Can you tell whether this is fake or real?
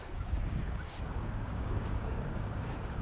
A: fake